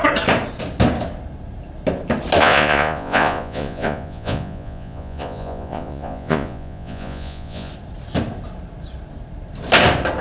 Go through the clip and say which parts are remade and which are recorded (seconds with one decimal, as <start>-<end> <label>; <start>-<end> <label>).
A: 0.0-2.4 recorded; 2.4-7.7 remade; 7.7-10.2 recorded